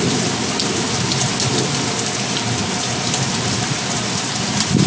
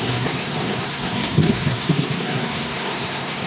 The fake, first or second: second